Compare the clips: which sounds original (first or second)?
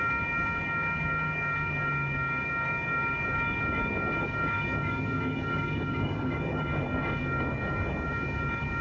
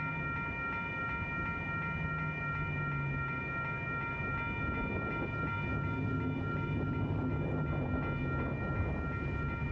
second